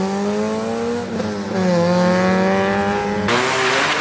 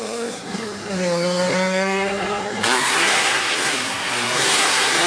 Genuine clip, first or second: first